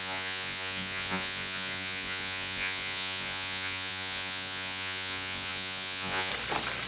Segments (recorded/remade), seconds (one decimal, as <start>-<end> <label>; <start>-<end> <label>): 0.0-6.3 remade; 6.3-6.9 recorded